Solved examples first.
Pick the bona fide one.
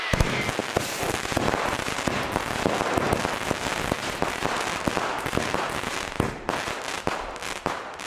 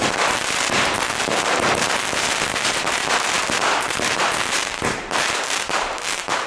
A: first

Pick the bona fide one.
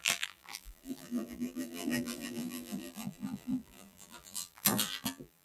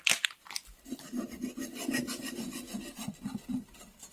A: second